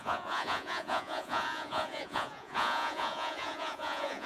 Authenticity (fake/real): fake